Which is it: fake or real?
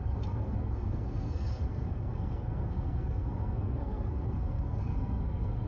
fake